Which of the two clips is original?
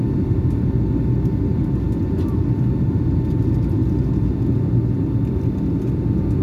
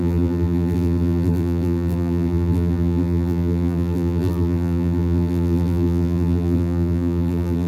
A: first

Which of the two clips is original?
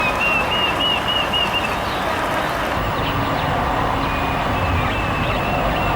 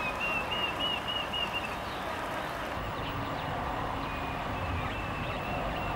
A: first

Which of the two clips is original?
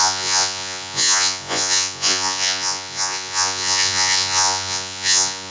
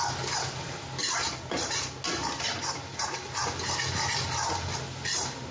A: second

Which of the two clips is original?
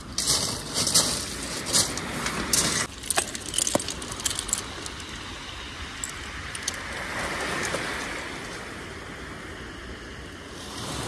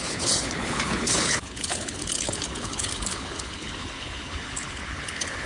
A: first